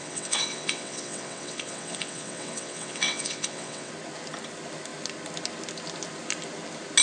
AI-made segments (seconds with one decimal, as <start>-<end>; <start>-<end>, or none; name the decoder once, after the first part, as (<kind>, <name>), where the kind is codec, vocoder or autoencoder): 0.0-3.9 (vocoder, WaveNeXt)